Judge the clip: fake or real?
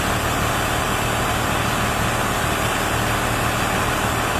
real